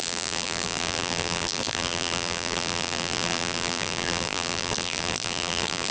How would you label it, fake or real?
fake